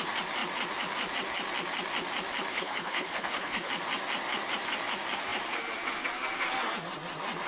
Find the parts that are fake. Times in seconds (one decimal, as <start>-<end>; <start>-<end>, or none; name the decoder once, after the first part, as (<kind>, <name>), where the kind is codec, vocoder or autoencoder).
2.5-3.7 (codec, HILCodec)